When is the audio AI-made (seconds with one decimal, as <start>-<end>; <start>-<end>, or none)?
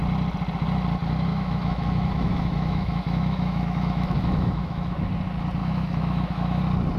1.3-5.1; 5.6-6.6